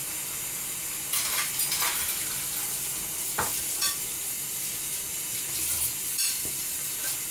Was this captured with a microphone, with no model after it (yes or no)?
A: yes